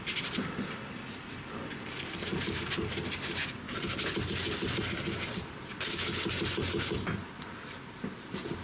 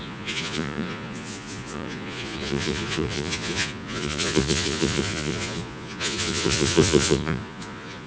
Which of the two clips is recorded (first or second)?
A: first